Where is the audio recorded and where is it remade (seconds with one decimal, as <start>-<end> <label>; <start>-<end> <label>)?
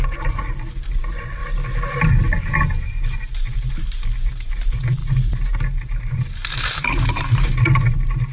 0.0-1.4 remade; 1.4-2.1 recorded; 2.1-8.3 remade